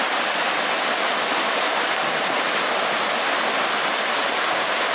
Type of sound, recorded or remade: recorded